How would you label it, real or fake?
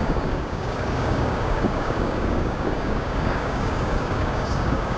fake